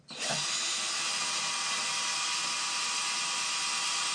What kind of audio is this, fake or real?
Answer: real